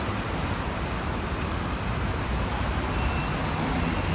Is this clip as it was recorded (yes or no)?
no